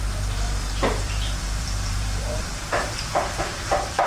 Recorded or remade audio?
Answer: remade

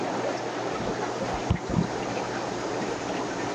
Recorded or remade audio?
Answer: recorded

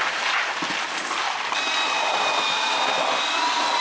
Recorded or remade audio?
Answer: remade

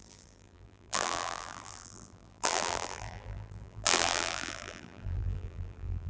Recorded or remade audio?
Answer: remade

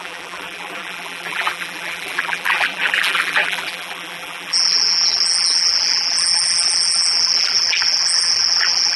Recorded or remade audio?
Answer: remade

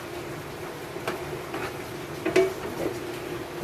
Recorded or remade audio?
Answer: recorded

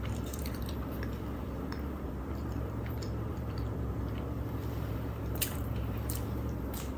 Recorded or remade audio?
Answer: remade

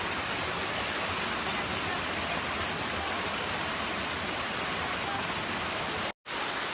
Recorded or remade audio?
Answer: recorded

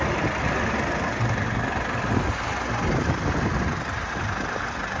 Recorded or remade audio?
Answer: recorded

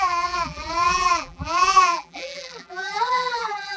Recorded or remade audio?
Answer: remade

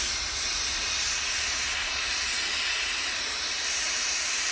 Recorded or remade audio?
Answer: remade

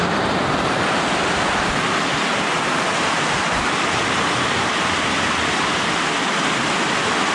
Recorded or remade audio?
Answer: recorded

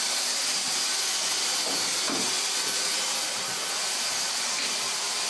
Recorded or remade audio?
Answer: recorded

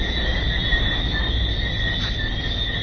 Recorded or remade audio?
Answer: recorded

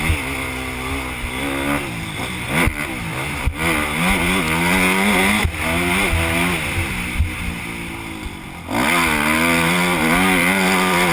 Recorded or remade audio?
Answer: recorded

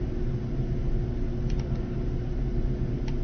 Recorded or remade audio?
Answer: recorded